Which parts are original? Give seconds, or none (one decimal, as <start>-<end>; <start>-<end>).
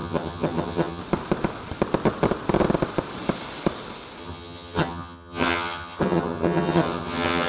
1.0-4.2